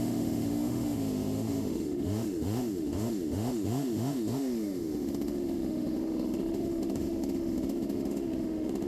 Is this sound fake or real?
fake